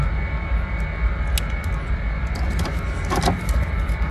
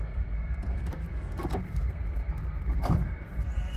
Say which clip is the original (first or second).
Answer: first